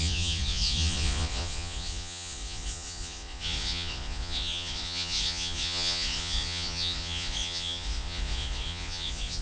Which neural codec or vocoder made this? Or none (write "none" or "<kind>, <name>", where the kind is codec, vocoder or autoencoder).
vocoder, Vocos